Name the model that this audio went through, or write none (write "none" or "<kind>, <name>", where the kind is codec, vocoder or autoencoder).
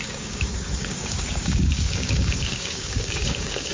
codec, DAC